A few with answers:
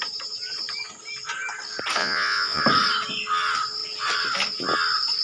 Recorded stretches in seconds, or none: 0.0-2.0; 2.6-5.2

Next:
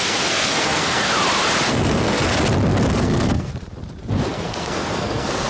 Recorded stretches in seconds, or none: 1.1-1.7; 2.3-2.9; 3.5-4.3

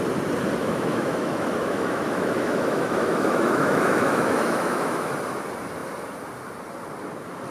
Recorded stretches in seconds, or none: 0.0-0.6; 5.1-7.5

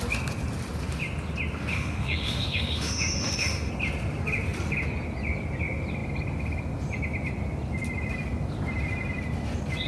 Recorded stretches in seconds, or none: 0.0-1.7; 3.7-9.9

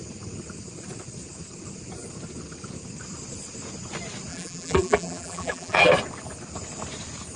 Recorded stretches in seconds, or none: 0.0-4.3; 5.9-7.4

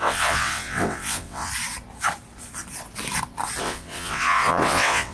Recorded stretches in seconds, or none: 1.5-3.6

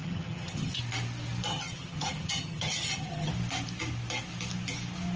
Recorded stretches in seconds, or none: 0.8-1.5; 3.3-5.2